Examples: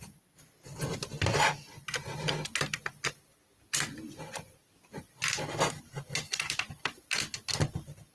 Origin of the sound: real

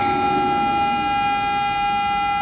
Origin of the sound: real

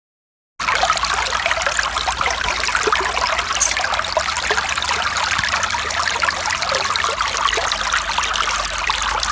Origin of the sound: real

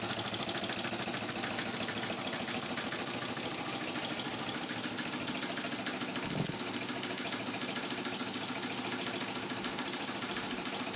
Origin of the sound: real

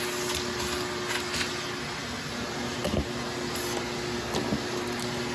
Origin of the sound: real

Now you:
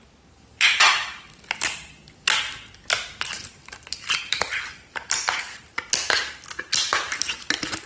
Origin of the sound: real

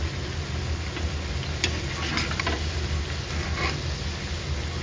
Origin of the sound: real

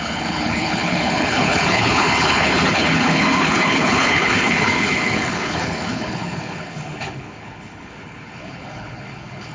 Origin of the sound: fake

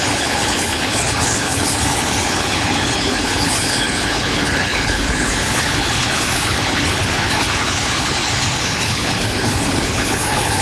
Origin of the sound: fake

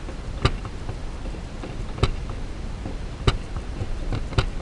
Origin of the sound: real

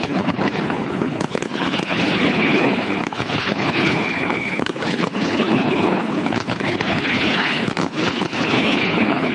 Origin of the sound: fake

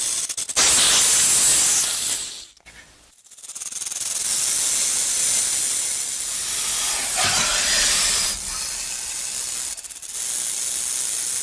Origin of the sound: real